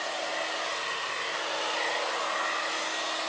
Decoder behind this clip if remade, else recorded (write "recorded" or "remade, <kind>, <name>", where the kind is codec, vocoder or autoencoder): recorded